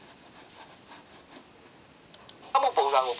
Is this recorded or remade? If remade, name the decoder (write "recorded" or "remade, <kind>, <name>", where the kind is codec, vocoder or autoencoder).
recorded